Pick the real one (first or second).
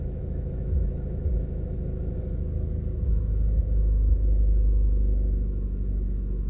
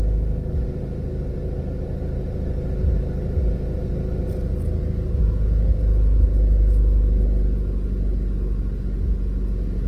second